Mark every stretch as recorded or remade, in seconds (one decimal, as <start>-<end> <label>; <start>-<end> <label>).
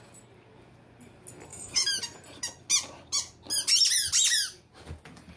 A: 0.0-1.5 recorded; 1.5-2.0 remade; 2.0-5.4 recorded